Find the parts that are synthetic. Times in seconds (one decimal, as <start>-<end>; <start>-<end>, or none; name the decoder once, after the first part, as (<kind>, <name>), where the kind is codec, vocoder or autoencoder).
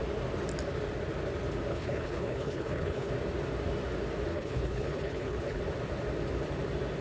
1.7-3.1 (codec, HILCodec); 4.3-5.6